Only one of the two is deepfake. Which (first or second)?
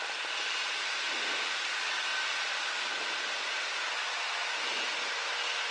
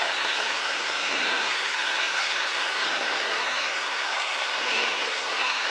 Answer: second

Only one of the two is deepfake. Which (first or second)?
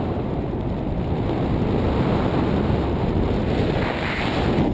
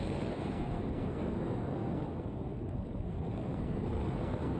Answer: second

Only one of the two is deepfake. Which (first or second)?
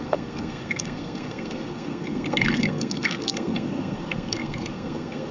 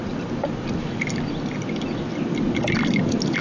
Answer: first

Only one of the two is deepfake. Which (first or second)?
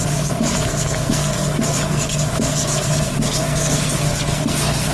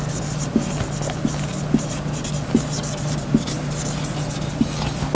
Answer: first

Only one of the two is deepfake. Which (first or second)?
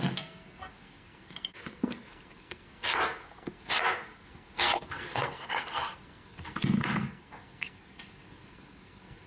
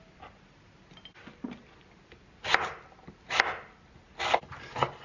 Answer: first